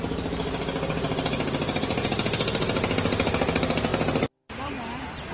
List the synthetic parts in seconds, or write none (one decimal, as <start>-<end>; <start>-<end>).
none